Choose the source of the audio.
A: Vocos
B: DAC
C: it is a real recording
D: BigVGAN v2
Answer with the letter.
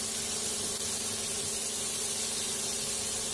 C